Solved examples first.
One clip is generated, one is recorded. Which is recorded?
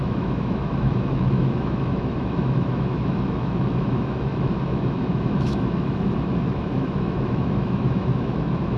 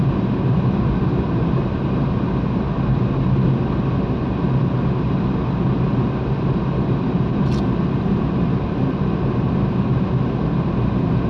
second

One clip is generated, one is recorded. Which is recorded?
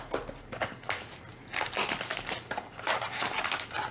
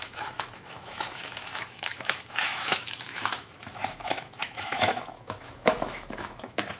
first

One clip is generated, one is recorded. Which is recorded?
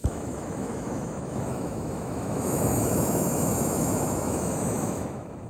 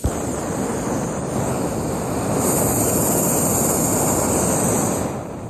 second